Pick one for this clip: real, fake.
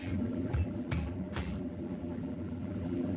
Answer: fake